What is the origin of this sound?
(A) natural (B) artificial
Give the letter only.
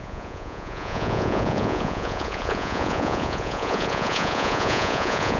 B